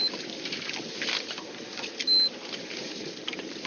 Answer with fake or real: real